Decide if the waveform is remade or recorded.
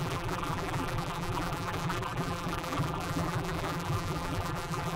remade